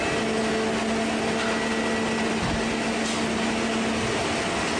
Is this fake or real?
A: real